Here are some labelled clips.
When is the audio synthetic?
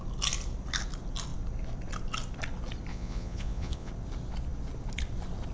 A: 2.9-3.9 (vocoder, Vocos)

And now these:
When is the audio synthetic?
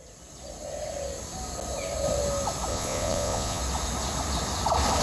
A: 2.7-3.6 (vocoder, Vocos)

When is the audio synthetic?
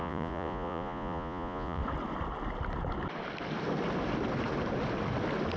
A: 0.0-1.8 (vocoder, Vocos)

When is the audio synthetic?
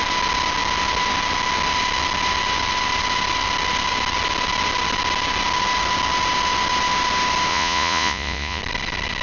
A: 7.5-8.6 (vocoder, Vocos)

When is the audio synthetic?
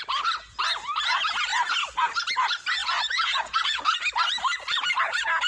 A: 2.8-3.8 (vocoder, Vocos)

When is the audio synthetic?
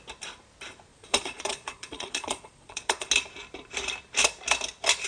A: 0.9-3.1 (vocoder, Vocos)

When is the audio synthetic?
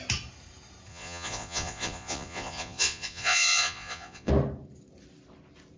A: 0.9-4.3 (vocoder, Vocos)